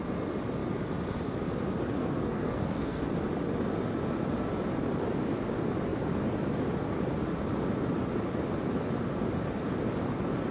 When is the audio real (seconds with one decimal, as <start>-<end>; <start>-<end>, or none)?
0.0-2.0; 3.0-10.5

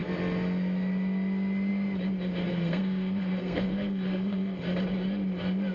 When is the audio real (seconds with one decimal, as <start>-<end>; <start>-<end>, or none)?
0.0-2.5; 4.6-5.7